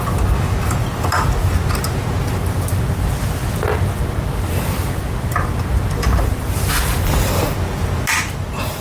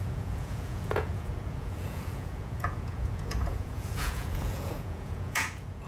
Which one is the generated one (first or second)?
second